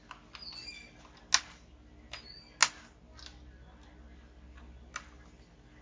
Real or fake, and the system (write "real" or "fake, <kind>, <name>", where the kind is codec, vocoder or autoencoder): real